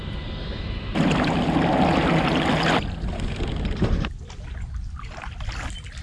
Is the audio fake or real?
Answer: real